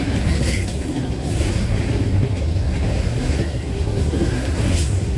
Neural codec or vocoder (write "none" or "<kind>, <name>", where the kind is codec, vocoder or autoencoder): codec, SNAC